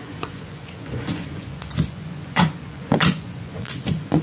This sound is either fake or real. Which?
fake